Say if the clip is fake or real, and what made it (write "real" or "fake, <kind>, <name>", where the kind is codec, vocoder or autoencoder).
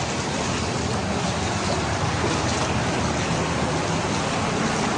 real